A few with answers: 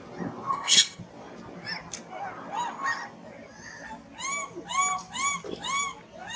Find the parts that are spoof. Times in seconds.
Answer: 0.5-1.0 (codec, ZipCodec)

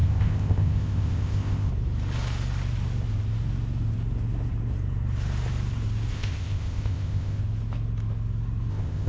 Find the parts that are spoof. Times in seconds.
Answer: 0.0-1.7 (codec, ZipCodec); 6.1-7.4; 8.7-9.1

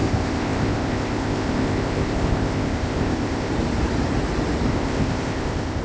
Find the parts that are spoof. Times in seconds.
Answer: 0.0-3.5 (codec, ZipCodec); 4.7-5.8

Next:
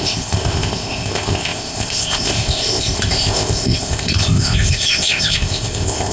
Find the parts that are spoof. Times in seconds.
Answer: 0.0-6.1 (codec, ZipCodec)

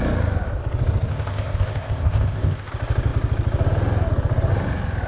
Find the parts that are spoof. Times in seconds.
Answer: 1.1-2.7 (codec, ZipCodec)

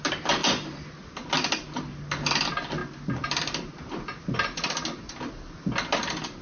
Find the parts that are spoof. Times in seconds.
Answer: none